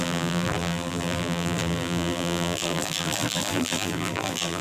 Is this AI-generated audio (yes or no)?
yes